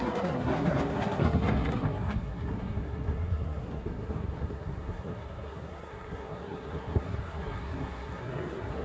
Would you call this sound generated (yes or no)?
yes